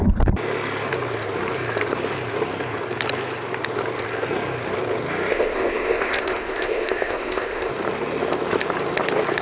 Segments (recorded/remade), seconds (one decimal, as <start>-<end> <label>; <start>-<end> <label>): 0.0-5.3 recorded; 5.3-7.7 remade; 7.7-9.4 recorded